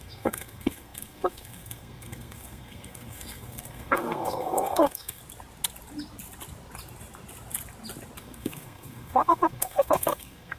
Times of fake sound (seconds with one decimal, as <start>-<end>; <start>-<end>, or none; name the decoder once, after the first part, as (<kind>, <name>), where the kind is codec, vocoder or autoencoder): 0.0-5.2 (codec, SNAC); 8.2-10.6